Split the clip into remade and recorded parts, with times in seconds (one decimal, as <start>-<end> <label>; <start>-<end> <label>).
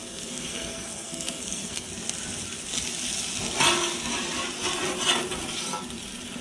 0.0-1.9 remade; 1.9-6.4 recorded